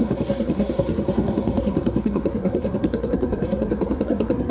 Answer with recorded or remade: remade